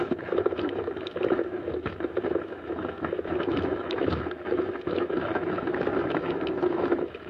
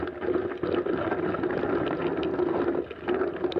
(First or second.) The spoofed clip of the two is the first